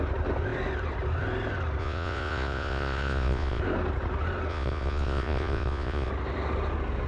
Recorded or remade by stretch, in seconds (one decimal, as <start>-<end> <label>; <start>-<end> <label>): 0.0-1.8 recorded; 1.8-3.6 remade; 3.6-4.5 recorded; 4.5-6.1 remade; 6.1-7.1 recorded